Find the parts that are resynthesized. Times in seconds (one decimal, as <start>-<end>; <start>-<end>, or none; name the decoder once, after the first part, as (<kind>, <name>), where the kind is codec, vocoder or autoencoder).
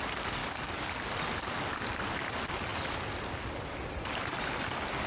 0.4-1.1 (codec, DAC)